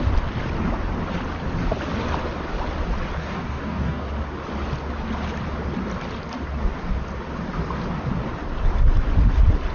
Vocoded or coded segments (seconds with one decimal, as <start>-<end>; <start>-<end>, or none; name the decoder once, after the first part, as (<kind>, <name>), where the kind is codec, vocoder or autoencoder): 3.2-4.1 (codec, DAC)